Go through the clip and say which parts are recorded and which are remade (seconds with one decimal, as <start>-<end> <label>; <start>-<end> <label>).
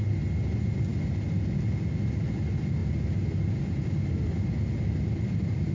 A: 0.0-5.7 recorded